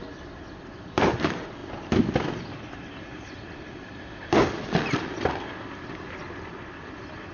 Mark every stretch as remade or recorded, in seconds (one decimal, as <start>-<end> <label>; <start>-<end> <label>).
0.0-7.3 recorded